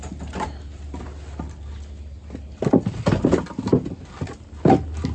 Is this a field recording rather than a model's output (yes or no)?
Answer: yes